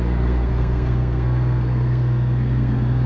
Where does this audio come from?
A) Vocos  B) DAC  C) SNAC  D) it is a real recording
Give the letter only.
C